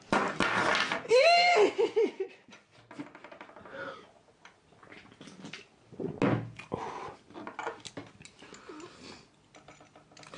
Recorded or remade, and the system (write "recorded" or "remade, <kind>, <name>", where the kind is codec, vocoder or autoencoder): recorded